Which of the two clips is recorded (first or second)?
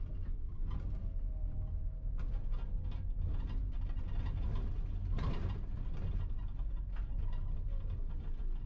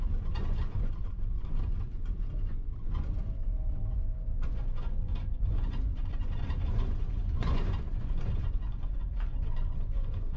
first